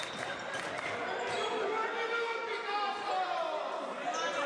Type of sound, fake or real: real